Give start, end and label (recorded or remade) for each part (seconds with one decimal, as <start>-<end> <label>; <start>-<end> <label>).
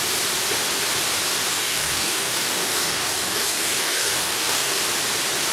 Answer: 0.0-1.5 recorded; 1.5-4.8 remade; 4.8-5.5 recorded